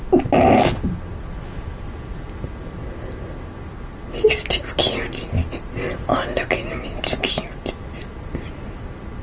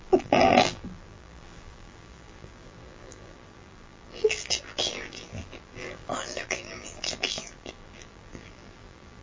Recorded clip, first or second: first